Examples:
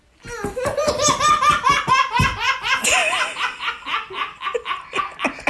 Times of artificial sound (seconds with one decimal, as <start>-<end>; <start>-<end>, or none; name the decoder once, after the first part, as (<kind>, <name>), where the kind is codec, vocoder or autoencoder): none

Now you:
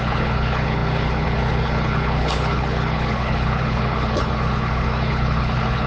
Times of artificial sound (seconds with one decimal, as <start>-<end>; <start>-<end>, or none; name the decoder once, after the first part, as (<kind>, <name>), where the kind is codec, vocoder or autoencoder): 0.0-5.9 (codec, HILCodec)

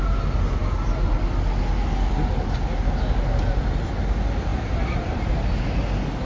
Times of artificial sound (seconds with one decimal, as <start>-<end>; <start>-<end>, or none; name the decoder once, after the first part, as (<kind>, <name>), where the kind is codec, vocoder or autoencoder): none

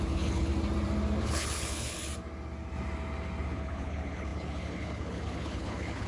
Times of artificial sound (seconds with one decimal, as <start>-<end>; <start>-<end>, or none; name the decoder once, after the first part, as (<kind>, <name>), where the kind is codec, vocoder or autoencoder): 0.0-0.5 (codec, HILCodec); 1.2-2.1; 3.4-6.1

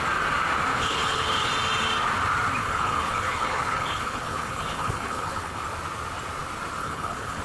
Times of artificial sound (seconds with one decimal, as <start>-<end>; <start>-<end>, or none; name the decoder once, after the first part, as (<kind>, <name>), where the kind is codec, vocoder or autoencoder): 0.7-1.5 (codec, HILCodec); 2.6-5.6; 6.8-7.4